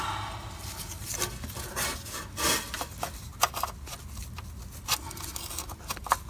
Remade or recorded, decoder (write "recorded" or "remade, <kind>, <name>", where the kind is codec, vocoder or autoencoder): recorded